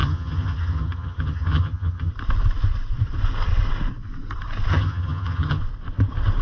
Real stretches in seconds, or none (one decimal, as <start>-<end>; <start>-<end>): 2.1-4.7; 5.6-6.4